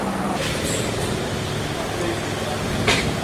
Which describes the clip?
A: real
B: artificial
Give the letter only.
A